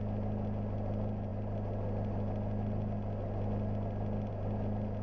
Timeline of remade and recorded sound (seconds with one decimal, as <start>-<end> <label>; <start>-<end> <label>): 0.0-5.0 recorded